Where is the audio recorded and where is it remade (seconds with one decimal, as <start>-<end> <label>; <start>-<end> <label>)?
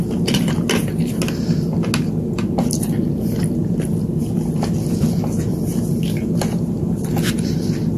0.0-8.0 recorded